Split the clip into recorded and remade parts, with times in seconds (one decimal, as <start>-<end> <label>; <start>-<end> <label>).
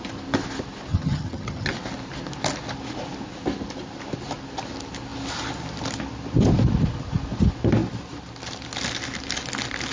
0.0-0.9 recorded; 0.9-1.7 remade; 1.7-9.9 recorded